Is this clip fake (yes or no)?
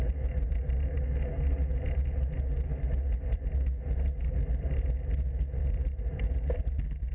no